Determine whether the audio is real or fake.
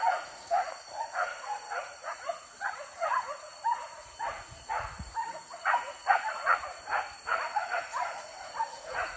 fake